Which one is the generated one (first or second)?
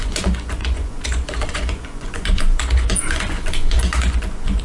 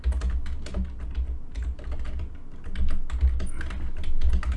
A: first